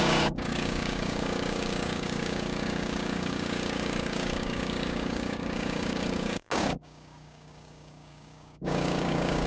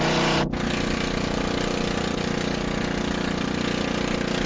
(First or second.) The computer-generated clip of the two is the first